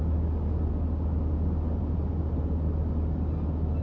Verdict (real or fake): real